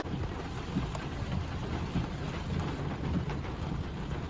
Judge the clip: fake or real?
real